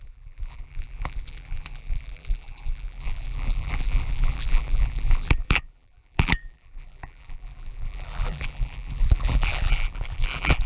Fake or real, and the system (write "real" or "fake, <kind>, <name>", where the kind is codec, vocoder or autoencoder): fake, vocoder, BigVGAN v2